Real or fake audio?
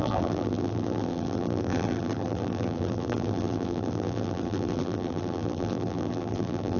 fake